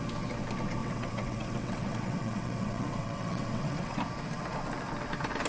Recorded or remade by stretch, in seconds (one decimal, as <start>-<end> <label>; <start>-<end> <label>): 0.0-0.8 recorded; 0.8-4.0 remade; 4.0-5.5 recorded